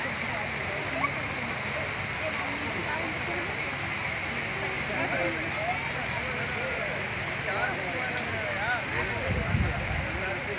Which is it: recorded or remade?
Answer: recorded